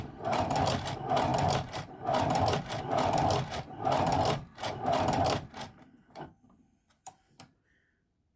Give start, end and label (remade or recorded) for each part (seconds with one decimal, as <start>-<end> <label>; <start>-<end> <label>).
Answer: 0.0-4.1 remade; 4.1-5.6 recorded; 5.6-8.4 remade